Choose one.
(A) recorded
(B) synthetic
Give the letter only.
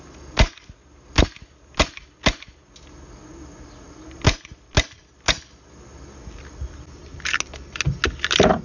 A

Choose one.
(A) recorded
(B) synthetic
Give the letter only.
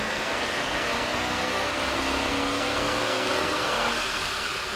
B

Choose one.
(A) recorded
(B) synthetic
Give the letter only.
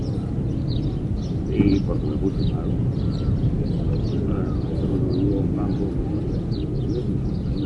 A